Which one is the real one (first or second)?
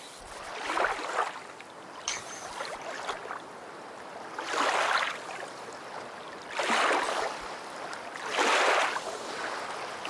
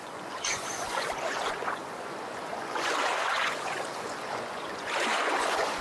first